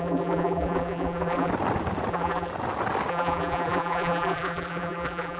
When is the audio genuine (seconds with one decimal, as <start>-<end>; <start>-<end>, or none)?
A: 1.5-2.1; 2.5-3.1